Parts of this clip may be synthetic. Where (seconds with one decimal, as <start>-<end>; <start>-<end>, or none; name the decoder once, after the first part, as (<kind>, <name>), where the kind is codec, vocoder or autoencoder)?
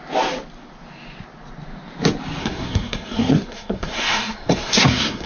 2.4-5.3 (codec, SNAC)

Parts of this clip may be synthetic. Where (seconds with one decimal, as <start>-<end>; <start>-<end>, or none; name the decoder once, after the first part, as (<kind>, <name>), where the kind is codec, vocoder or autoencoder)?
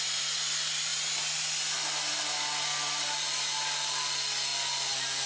none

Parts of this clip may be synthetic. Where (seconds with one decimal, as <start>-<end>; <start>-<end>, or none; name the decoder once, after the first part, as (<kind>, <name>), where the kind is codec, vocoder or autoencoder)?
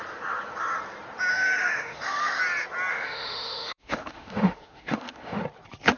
1.3-2.4 (autoencoder, DAC-VAE); 2.9-5.4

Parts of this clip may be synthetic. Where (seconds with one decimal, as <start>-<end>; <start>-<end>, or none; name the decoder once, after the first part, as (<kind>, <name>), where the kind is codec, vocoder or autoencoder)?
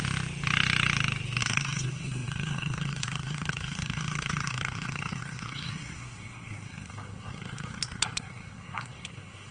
1.4-9.5 (codec, SNAC)